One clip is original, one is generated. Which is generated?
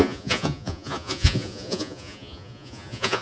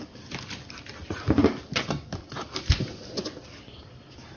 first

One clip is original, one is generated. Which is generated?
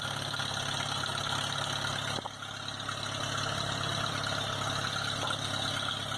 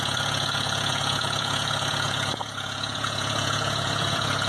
second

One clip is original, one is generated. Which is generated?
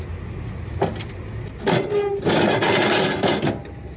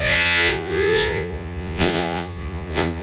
second